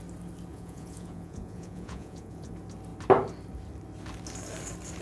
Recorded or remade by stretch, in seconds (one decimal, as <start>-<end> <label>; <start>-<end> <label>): 0.0-0.5 recorded; 0.5-2.5 remade; 2.5-5.0 recorded